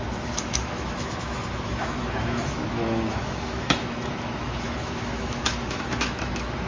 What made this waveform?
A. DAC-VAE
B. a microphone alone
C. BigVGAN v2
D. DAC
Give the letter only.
A